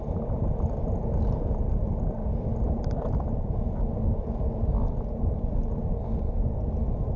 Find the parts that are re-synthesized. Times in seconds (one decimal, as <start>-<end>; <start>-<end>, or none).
none